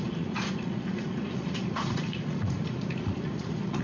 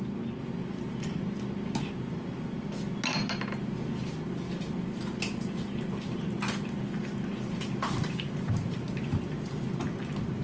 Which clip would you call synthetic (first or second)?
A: first